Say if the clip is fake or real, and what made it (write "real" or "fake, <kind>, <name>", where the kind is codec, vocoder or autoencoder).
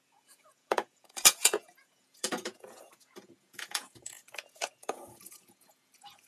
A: fake, vocoder, Vocos